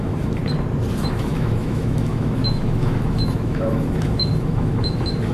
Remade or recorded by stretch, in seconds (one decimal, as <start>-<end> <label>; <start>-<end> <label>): 0.0-0.4 remade; 0.4-1.0 recorded; 1.0-5.3 remade